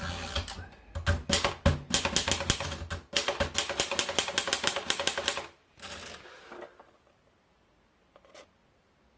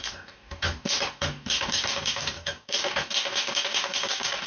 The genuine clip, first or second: first